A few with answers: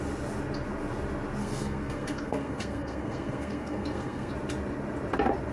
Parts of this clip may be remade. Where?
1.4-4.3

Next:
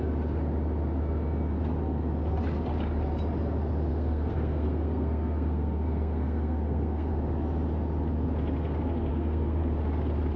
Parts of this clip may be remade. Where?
3.9-7.1; 9.1-9.6

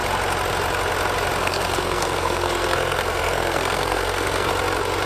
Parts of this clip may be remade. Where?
1.4-4.5

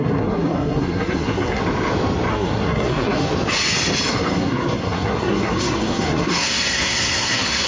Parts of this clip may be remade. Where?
0.0-1.6; 2.3-3.3; 4.1-7.7

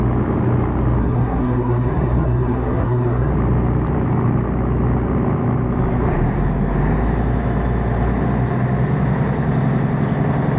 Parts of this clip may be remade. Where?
1.0-3.3